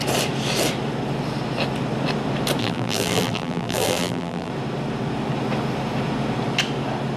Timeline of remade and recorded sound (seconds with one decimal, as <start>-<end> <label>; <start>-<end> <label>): 0.0-2.6 recorded; 2.6-4.5 remade; 4.5-7.2 recorded